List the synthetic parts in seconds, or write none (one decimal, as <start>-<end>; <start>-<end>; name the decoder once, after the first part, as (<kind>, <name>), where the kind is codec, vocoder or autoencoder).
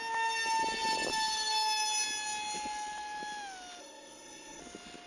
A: 3.8-4.6 (codec, SNAC)